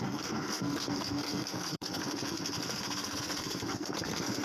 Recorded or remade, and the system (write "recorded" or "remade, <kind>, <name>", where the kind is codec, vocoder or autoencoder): remade, codec, SNAC